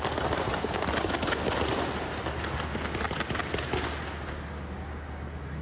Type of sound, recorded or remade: recorded